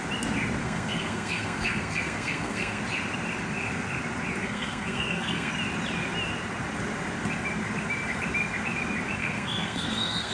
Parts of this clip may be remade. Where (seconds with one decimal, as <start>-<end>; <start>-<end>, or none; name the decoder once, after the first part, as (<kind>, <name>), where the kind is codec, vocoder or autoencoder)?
0.6-2.8 (codec, SNAC); 4.4-5.5; 9.2-10.3